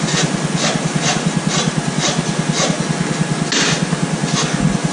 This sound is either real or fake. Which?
real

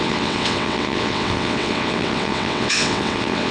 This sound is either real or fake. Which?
fake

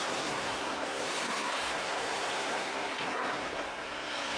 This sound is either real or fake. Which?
fake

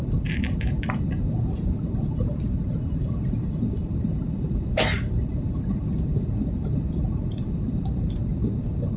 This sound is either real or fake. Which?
fake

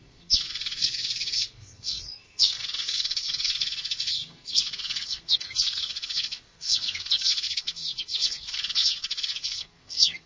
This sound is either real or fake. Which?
fake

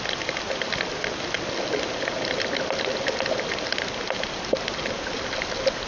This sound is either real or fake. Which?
real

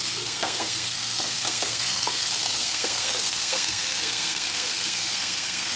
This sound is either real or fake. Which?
fake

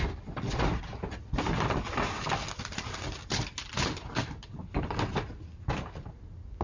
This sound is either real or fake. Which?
real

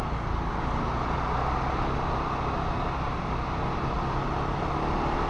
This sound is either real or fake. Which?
real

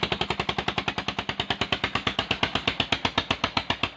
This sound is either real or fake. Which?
real